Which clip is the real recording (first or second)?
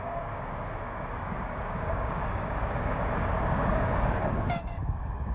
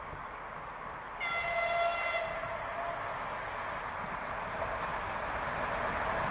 second